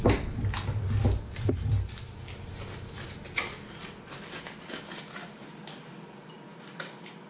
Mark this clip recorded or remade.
recorded